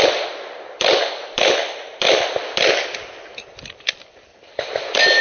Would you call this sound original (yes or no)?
yes